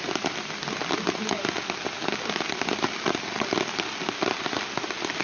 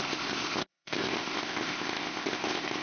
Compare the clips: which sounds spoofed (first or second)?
second